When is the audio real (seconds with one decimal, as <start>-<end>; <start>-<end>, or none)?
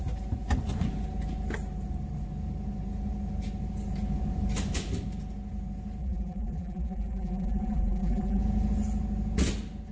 0.0-6.0; 8.4-9.9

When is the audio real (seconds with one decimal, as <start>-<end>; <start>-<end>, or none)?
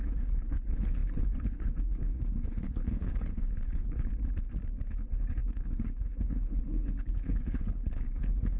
4.1-4.9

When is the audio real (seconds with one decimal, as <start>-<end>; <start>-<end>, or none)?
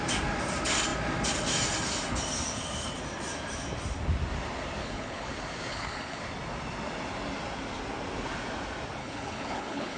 0.0-4.8; 5.3-5.7; 6.2-9.0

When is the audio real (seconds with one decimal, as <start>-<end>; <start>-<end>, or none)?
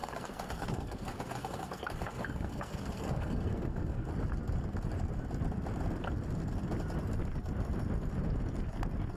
4.1-9.2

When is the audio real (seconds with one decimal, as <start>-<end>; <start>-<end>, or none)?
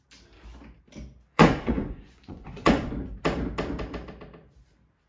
0.0-1.3; 2.9-5.1